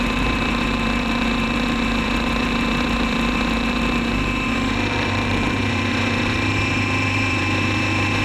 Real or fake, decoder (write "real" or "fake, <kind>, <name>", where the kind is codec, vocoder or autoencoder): fake, vocoder, BigVGAN v2